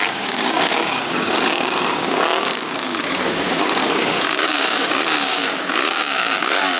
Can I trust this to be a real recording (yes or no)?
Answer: no